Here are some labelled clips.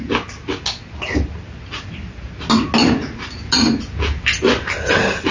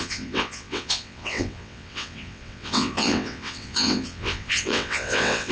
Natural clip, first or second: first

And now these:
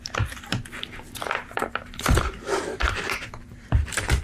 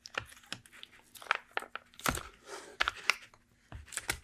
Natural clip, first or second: second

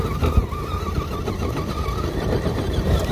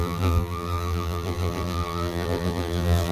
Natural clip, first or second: first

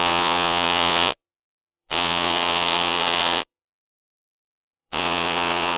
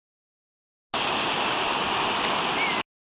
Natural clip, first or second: second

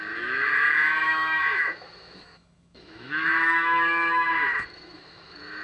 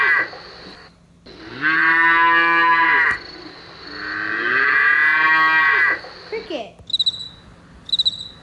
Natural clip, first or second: second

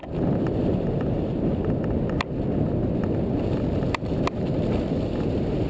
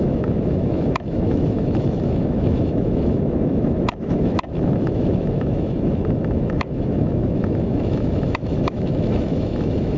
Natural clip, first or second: first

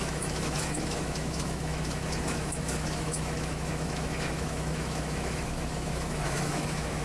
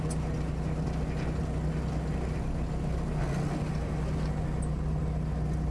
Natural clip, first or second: second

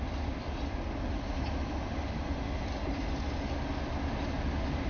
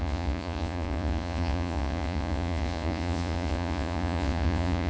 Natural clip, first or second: first